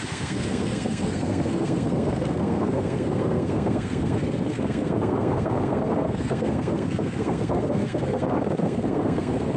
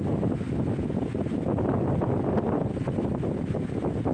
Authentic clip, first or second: second